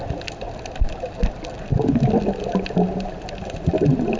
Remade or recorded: recorded